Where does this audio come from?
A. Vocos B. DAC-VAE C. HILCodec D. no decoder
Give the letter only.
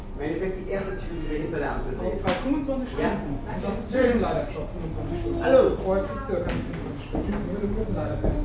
D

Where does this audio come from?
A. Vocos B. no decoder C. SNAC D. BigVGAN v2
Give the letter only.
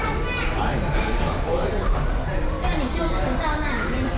D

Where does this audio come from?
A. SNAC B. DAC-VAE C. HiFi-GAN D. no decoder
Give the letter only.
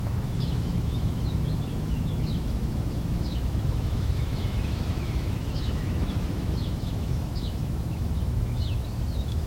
B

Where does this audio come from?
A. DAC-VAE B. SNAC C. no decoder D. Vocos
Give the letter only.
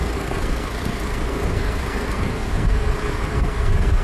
B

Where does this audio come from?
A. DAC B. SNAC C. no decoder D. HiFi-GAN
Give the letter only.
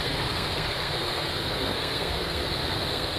B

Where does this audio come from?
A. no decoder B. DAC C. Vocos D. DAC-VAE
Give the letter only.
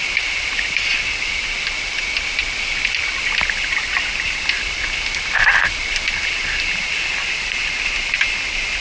A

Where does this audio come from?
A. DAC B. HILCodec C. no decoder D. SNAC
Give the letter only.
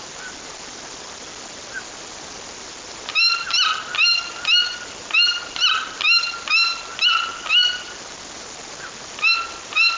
C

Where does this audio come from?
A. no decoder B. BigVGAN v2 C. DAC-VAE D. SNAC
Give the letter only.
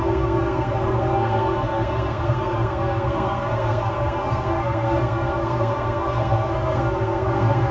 D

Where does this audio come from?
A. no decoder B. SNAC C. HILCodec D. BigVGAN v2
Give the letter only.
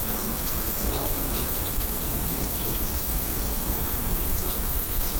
B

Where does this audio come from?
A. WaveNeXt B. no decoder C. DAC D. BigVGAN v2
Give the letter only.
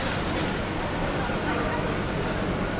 D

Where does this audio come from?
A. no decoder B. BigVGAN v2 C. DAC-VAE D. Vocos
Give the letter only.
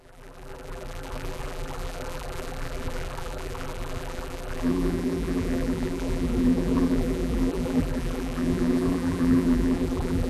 B